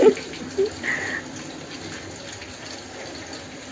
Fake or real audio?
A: real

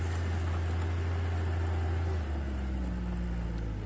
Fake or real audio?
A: real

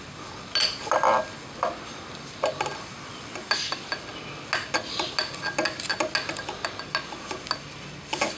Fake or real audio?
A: real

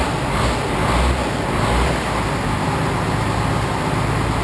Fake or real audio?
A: real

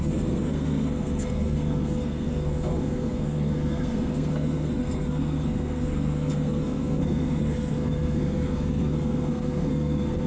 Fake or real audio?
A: fake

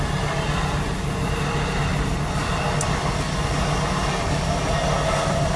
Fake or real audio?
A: real